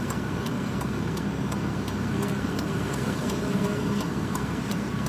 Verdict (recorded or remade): remade